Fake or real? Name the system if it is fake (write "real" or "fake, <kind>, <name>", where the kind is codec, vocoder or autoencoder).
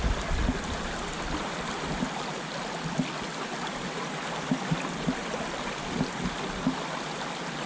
real